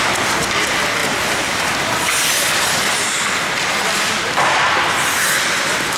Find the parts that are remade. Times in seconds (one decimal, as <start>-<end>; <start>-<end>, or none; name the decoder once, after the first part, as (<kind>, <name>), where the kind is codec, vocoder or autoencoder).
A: none